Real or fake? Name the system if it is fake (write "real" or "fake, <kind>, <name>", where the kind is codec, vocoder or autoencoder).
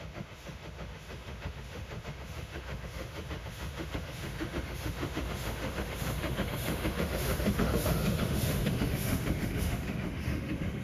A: fake, autoencoder, DAC-VAE